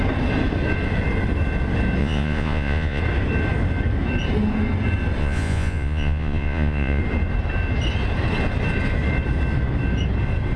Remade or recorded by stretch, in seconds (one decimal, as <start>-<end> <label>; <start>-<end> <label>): 0.0-2.0 recorded; 2.0-3.0 remade; 3.0-5.2 recorded; 5.2-7.0 remade; 7.0-10.6 recorded